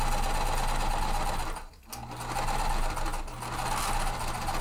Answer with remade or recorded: recorded